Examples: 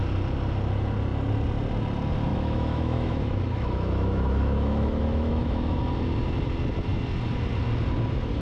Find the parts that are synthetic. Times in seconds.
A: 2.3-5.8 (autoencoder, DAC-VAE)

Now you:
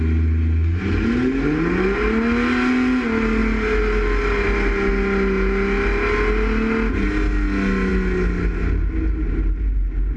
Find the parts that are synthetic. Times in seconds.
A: none

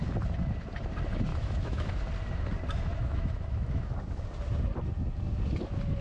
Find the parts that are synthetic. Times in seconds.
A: 1.3-1.9 (autoencoder, DAC-VAE); 2.9-3.9